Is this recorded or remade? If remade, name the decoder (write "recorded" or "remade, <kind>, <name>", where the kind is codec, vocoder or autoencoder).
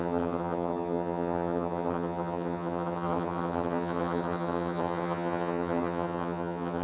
remade, vocoder, HiFi-GAN